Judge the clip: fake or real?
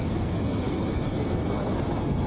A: fake